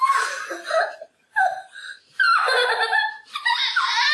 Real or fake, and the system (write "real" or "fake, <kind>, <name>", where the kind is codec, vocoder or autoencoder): real